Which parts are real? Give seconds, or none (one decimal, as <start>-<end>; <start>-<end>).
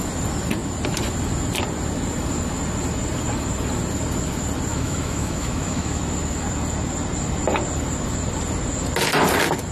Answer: 0.0-4.7; 6.0-9.7